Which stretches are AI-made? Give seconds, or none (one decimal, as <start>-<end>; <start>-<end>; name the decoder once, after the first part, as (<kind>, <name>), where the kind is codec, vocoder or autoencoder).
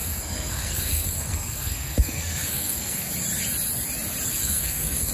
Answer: 0.0-3.1 (codec, SNAC); 4.3-5.1